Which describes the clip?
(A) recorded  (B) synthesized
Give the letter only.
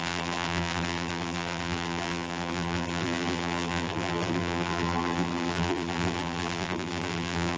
B